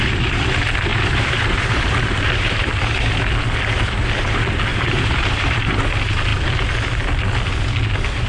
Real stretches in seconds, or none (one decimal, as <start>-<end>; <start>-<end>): 0.0-0.9; 2.7-4.7; 5.8-8.3